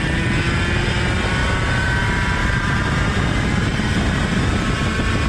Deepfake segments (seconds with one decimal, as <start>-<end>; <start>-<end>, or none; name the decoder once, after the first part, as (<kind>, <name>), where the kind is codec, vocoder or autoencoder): 2.4-5.3 (vocoder, BigVGAN v2)